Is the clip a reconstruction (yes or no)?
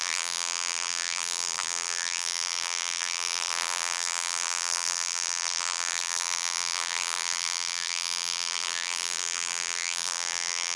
yes